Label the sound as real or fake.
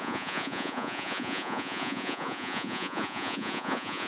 fake